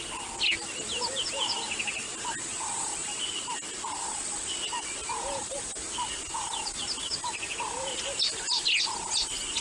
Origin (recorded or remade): recorded